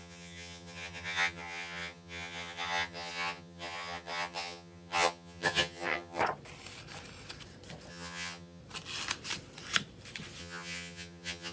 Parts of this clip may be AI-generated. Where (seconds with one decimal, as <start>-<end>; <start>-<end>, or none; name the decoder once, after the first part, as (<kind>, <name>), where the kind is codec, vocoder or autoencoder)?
0.0-6.2 (vocoder, HiFi-GAN); 7.9-8.6; 10.4-11.5